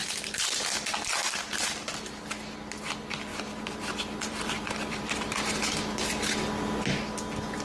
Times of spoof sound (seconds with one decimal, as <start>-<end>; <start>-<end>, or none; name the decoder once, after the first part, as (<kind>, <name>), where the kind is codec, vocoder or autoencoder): 0.0-0.5 (vocoder, BigVGAN v2); 1.2-2.0; 3.3-5.5